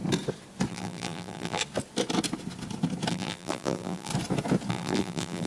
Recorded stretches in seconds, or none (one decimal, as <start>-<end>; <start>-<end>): 0.0-0.7; 1.6-3.1; 4.1-4.7